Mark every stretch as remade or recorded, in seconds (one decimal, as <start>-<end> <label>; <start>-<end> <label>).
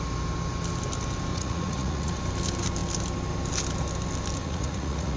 0.0-1.3 recorded; 1.3-2.2 remade; 2.2-4.4 recorded; 4.4-5.2 remade